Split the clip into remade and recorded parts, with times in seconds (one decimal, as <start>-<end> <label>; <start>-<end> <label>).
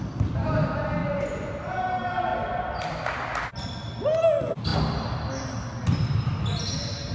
0.0-1.0 recorded; 1.0-1.5 remade; 1.5-7.1 recorded